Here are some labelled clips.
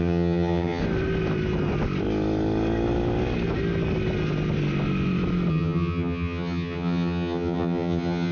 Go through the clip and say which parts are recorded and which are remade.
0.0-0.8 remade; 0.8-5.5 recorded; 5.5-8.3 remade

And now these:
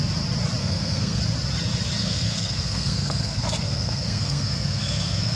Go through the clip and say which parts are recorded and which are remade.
0.0-0.6 recorded; 0.6-1.2 remade; 1.2-2.0 recorded; 2.0-5.4 remade

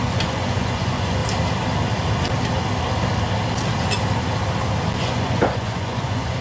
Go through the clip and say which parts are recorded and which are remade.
0.0-1.2 remade; 1.2-5.0 recorded; 5.0-6.4 remade

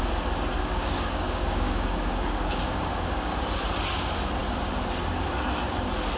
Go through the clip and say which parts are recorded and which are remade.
0.0-0.6 recorded; 0.6-3.3 remade; 3.3-6.2 recorded

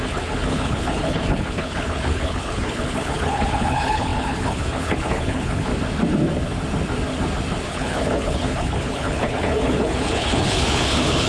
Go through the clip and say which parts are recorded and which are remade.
0.0-5.7 remade; 5.7-7.7 recorded; 7.7-11.3 remade

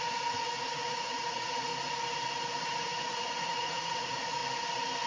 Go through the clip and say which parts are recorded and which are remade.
0.0-1.7 remade; 1.7-2.6 recorded; 2.6-4.4 remade; 4.4-5.1 recorded

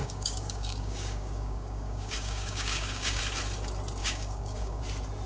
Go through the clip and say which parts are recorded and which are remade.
0.0-3.2 remade; 3.2-4.0 recorded; 4.0-4.8 remade; 4.8-5.3 recorded